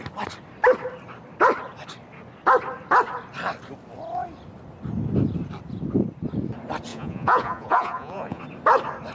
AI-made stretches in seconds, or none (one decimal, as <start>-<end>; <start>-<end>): 6.9-8.4